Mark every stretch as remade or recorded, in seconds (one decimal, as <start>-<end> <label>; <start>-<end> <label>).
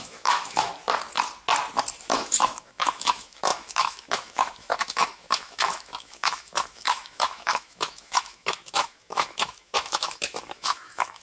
0.0-0.7 remade; 0.7-2.0 recorded; 2.0-11.2 remade